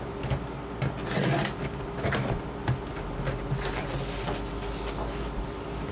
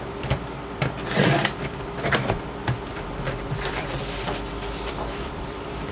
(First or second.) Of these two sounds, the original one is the first